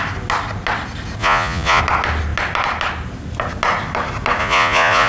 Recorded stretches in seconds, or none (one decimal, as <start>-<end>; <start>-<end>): 0.0-1.2; 1.8-4.4